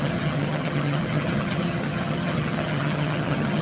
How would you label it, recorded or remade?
remade